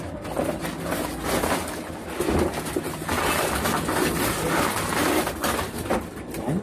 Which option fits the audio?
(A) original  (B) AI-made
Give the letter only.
A